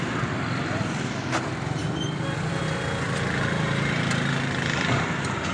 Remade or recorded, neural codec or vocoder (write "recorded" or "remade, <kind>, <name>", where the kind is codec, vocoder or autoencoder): recorded